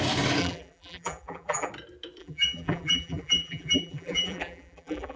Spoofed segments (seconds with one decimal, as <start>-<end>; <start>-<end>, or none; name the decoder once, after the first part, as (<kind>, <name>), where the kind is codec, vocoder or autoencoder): 0.4-1.7 (vocoder, BigVGAN v2); 2.2-5.2